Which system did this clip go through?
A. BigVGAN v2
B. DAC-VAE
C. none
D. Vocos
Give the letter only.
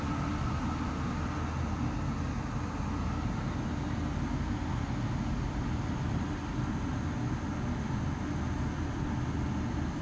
C